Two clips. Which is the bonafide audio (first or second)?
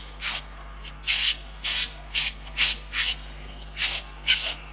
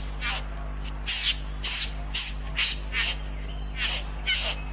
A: second